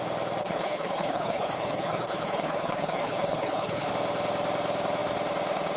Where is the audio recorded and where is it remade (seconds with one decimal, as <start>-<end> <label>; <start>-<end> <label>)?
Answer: 0.0-0.4 recorded; 0.4-3.9 remade; 3.9-5.8 recorded